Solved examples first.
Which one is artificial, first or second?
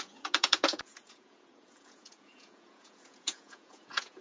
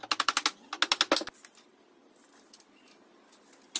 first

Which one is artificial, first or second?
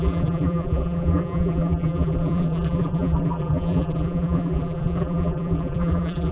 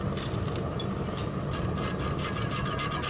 first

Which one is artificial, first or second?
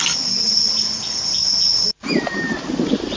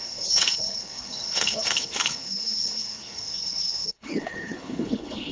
second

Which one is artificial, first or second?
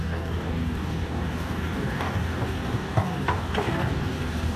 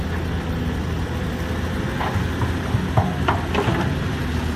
first